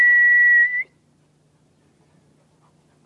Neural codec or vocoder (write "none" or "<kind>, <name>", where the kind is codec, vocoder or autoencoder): none